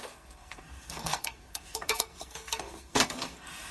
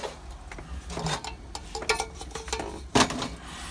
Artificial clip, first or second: first